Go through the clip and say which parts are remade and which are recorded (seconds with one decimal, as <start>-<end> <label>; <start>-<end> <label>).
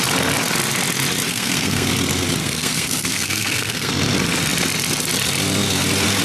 0.0-1.3 recorded; 1.3-1.9 remade; 1.9-2.4 recorded; 2.4-3.9 remade; 3.9-6.2 recorded